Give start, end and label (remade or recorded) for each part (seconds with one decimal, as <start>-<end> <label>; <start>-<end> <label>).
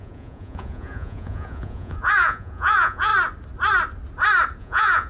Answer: 0.0-3.1 remade; 3.1-4.6 recorded; 4.6-5.1 remade